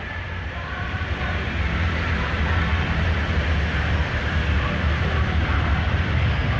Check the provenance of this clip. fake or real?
real